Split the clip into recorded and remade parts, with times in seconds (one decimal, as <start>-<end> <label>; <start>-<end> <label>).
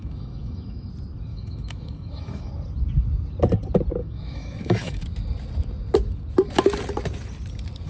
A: 0.0-0.9 remade; 0.9-1.3 recorded; 1.3-2.5 remade; 2.5-4.0 recorded; 4.0-5.0 remade; 5.0-7.9 recorded